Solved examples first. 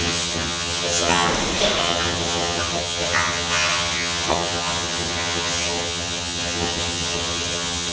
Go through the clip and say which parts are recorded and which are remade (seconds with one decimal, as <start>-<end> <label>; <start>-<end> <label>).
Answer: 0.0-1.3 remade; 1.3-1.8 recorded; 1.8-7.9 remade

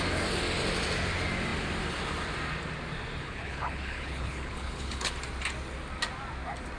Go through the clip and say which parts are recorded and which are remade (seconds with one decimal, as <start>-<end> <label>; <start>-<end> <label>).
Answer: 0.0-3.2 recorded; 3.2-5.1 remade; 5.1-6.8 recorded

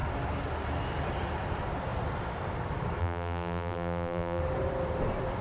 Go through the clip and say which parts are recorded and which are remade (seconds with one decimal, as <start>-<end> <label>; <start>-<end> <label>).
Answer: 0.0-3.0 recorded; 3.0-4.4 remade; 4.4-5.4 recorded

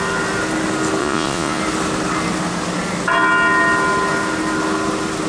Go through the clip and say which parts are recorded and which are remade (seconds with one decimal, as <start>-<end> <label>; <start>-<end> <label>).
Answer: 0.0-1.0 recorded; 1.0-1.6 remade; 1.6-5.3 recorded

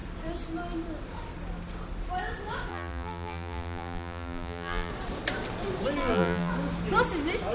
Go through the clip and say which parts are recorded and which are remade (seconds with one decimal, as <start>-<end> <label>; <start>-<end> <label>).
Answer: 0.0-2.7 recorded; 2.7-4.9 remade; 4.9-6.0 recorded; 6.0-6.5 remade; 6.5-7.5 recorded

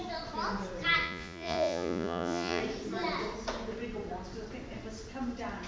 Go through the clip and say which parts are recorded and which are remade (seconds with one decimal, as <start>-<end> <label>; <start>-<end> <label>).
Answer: 0.0-1.0 recorded; 1.0-2.6 remade; 2.6-5.7 recorded

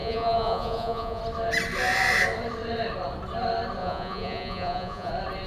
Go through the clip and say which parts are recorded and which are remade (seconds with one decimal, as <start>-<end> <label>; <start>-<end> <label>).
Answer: 0.0-1.2 remade; 1.2-3.8 recorded; 3.8-5.1 remade; 5.1-5.5 recorded

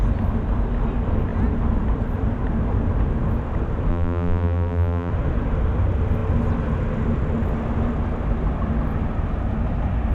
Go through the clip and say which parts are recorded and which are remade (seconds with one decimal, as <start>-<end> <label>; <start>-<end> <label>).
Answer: 0.0-3.9 recorded; 3.9-5.1 remade; 5.1-10.1 recorded